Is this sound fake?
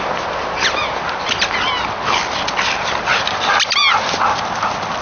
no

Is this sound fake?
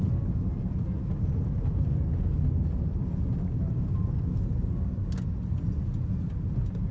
no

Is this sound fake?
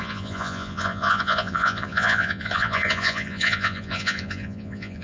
yes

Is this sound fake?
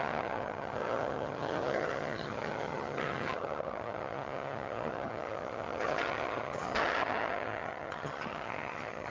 yes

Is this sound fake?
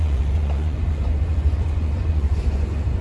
yes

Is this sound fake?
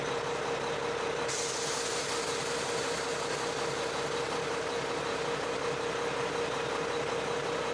no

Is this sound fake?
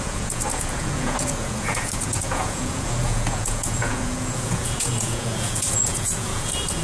yes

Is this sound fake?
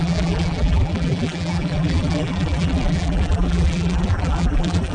yes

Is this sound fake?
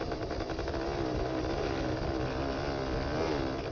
no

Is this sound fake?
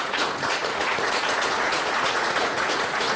yes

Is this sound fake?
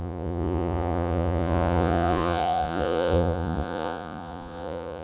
yes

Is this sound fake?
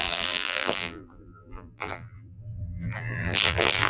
yes